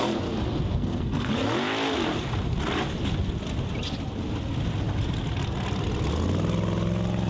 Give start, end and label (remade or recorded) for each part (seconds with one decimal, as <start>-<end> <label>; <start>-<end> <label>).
0.0-0.7 recorded; 0.7-1.3 remade; 1.3-7.3 recorded